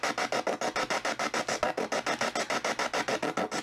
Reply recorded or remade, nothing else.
recorded